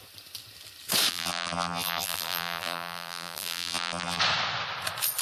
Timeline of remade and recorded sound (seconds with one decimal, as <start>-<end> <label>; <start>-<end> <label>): 0.0-1.1 recorded; 1.1-4.2 remade; 4.2-5.2 recorded